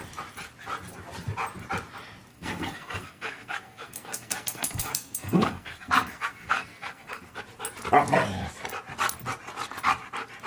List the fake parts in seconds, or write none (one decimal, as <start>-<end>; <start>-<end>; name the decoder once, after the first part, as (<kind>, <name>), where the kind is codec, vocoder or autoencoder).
2.3-7.4 (codec, SNAC)